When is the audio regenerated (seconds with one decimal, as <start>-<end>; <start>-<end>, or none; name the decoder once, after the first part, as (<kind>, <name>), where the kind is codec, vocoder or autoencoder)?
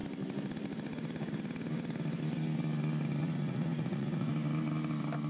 3.2-4.3 (vocoder, Vocos)